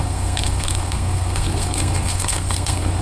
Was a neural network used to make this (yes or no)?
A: yes